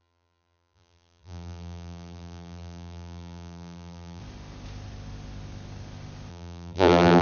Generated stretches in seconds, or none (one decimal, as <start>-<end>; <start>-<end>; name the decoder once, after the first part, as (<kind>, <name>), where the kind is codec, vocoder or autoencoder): 0.0-4.2 (vocoder, BigVGAN v2); 6.3-7.2